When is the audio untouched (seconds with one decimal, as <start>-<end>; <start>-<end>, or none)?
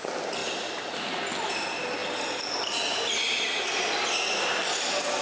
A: 0.0-5.2